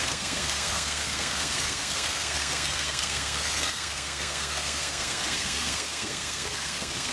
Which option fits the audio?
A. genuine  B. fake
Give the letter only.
B